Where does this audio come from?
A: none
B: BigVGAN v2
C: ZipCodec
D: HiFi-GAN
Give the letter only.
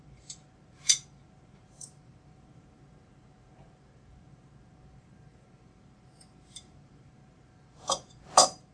B